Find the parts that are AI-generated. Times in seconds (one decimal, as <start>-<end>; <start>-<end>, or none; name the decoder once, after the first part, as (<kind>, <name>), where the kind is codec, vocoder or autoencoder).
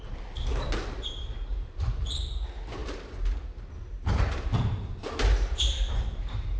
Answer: 1.5-2.0 (vocoder, BigVGAN v2); 2.8-6.6